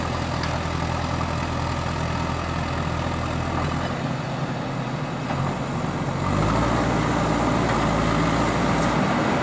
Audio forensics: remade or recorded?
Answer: recorded